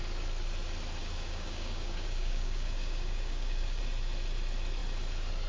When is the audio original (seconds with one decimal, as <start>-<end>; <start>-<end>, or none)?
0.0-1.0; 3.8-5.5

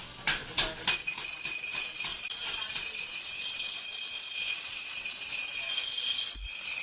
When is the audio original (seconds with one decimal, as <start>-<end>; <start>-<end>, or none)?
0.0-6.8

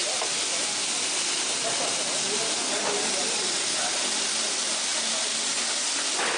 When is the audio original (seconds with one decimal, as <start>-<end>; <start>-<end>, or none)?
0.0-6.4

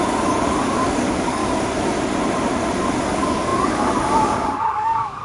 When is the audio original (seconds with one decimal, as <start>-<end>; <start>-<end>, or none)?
1.4-3.0